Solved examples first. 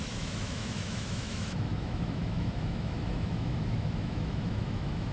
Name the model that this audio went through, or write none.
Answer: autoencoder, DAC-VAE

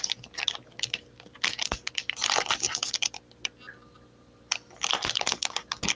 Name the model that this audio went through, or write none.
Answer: none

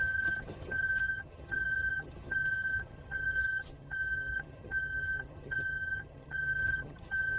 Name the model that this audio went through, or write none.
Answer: vocoder, HiFi-GAN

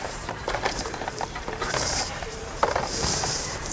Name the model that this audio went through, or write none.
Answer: vocoder, BigVGAN v2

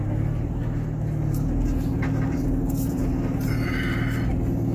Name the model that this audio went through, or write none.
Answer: none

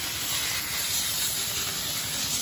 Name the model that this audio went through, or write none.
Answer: none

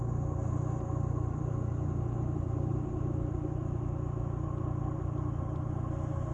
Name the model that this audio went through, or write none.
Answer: none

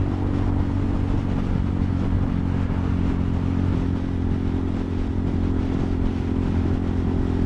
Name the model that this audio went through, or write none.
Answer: none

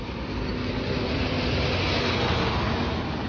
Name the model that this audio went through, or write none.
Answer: none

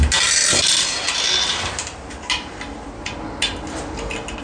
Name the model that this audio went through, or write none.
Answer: none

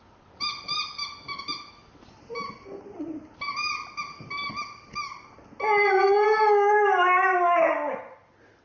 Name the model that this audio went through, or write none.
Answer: none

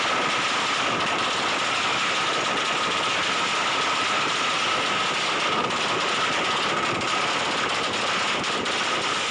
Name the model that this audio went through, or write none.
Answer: none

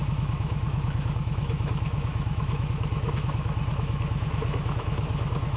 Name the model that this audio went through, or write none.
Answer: autoencoder, DAC-VAE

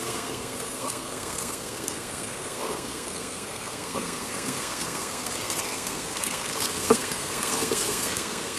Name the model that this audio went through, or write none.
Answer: codec, SNAC